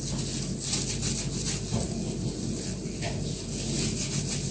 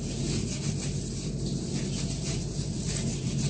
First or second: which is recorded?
first